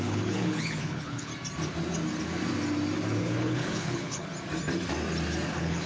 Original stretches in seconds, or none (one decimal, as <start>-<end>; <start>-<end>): 1.3-3.2; 4.3-5.5